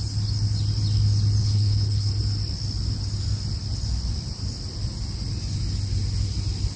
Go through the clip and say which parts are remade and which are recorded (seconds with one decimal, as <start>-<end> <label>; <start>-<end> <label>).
0.0-1.4 recorded; 1.4-2.1 remade; 2.1-6.8 recorded

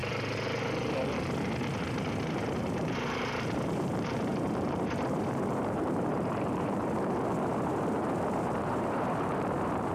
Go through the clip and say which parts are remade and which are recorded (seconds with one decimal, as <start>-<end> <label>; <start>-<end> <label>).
0.0-1.8 recorded; 1.8-9.9 remade

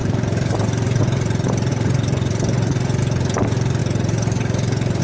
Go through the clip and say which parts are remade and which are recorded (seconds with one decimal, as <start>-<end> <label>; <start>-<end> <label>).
0.0-1.0 remade; 1.0-3.8 recorded; 3.8-5.0 remade

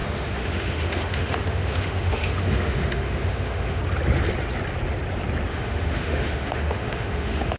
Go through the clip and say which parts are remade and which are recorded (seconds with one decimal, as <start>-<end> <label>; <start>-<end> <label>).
0.0-3.8 remade; 3.8-5.5 recorded; 5.5-7.6 remade

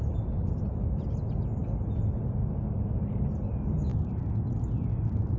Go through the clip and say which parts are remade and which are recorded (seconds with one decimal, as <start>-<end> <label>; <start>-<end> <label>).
0.0-5.4 recorded